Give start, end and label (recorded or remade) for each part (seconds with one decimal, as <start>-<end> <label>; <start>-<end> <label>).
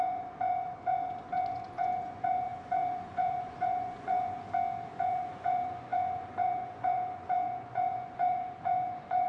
0.0-4.4 remade; 4.4-5.0 recorded; 5.0-9.3 remade